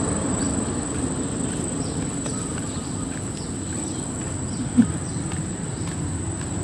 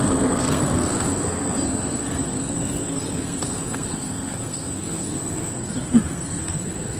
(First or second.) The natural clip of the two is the first